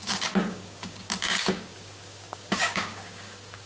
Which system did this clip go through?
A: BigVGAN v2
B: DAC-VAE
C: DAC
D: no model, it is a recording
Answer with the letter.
C